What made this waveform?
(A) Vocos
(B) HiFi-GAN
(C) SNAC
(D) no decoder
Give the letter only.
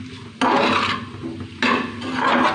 D